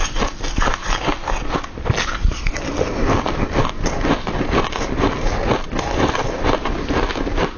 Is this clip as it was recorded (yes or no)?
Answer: yes